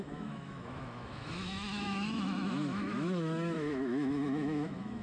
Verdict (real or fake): fake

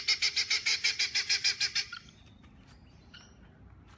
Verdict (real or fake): real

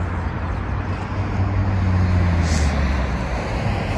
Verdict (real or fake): real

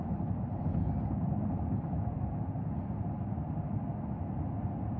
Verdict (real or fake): real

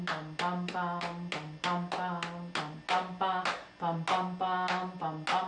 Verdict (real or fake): real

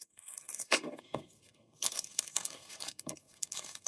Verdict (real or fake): fake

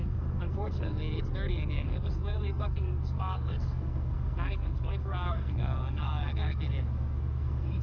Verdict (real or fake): fake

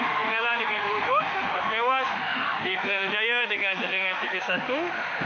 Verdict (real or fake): fake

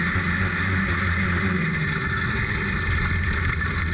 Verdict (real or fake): real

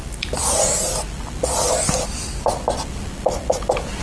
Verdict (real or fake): real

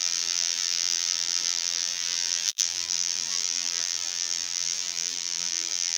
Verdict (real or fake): fake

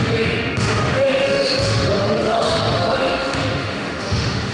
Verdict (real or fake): fake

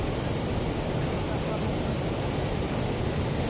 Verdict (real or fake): real